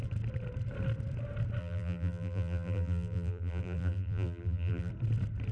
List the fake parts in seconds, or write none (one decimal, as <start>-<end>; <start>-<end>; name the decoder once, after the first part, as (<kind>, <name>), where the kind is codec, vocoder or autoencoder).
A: 1.6-4.9 (vocoder, BigVGAN v2)